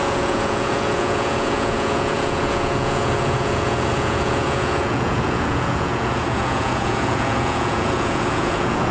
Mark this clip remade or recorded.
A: remade